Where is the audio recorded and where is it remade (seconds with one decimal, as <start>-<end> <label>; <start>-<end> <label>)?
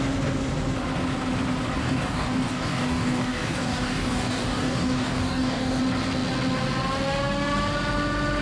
0.0-1.8 recorded; 1.8-5.8 remade; 5.8-8.4 recorded